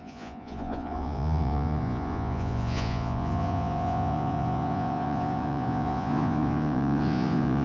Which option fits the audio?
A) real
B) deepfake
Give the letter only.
B